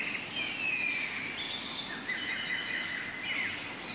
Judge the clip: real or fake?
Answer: real